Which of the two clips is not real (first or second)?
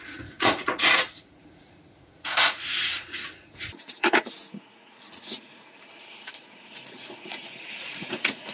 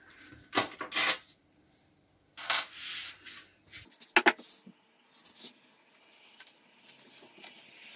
first